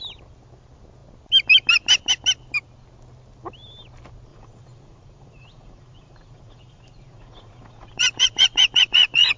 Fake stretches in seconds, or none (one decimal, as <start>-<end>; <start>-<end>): 4.3-9.4